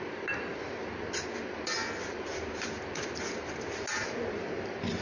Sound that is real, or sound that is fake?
real